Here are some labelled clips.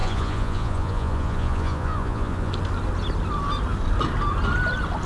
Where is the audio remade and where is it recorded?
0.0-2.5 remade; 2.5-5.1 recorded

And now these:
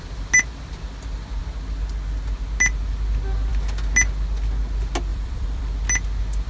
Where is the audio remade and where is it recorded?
0.0-5.1 recorded; 5.1-5.7 remade; 5.7-6.5 recorded

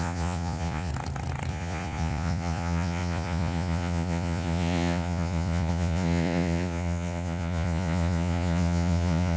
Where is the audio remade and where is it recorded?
0.0-0.9 remade; 0.9-1.5 recorded; 1.5-9.4 remade

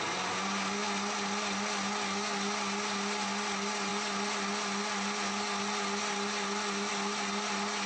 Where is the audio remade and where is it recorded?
0.0-7.9 recorded